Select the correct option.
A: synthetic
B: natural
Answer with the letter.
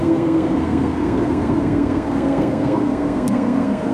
A